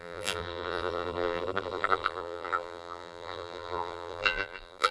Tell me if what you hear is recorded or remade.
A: remade